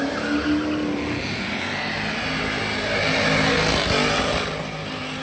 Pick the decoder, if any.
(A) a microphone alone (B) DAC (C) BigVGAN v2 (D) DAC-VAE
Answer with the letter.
A